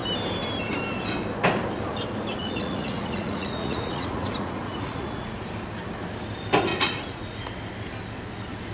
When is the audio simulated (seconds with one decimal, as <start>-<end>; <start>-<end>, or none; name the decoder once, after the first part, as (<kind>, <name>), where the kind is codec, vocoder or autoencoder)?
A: 2.4-5.4 (vocoder, Vocos); 6.7-7.5